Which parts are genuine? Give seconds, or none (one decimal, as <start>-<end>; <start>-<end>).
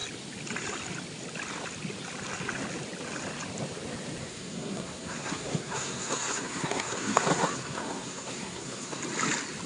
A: 0.0-4.2; 9.0-9.7